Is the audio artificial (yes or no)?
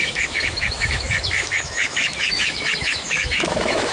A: yes